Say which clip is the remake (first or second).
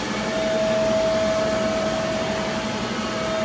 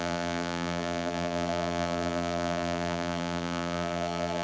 second